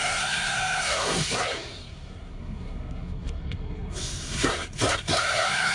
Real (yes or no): no